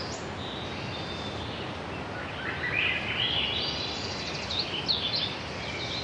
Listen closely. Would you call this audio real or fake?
real